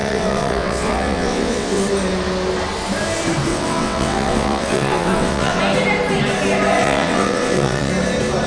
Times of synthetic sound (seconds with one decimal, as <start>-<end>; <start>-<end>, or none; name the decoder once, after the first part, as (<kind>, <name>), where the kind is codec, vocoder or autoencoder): 0.0-1.8 (vocoder, WaveNeXt); 3.5-5.6; 6.8-7.9